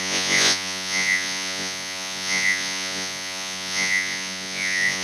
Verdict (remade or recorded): remade